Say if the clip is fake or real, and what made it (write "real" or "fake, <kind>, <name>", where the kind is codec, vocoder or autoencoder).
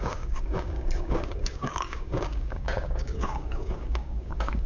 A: fake, codec, DAC